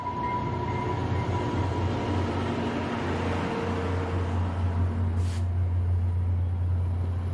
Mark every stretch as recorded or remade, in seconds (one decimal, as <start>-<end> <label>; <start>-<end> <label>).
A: 0.0-7.3 recorded